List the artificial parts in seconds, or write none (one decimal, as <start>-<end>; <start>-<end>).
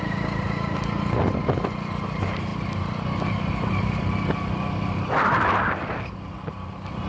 none